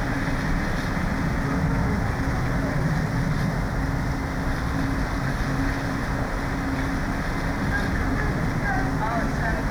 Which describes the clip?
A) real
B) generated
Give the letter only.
A